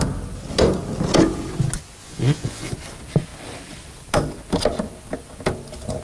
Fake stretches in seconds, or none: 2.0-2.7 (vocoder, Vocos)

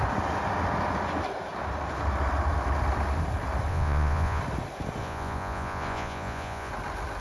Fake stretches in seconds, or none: 3.7-4.4 (vocoder, Vocos); 5.0-6.7

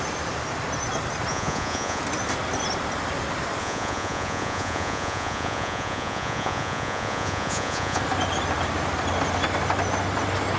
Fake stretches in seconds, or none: 1.3-2.0 (vocoder, Vocos); 3.6-8.0